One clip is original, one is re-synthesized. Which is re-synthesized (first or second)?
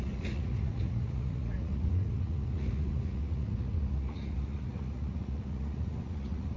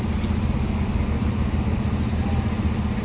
first